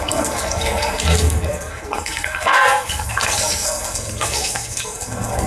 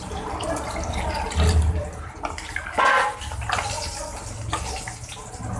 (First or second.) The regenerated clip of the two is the first